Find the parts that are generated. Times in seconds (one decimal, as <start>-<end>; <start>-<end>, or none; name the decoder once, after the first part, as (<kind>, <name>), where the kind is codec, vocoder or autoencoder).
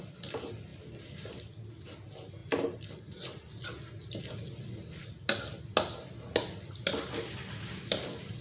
0.7-1.3 (vocoder, BigVGAN v2); 2.4-3.4